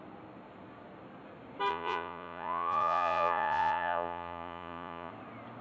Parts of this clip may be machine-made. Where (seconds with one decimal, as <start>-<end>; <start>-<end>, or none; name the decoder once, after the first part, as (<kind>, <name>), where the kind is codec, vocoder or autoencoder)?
1.7-5.1 (vocoder, Vocos)